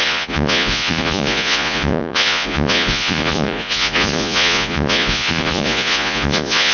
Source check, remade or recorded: remade